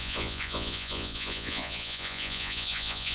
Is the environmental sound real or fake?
fake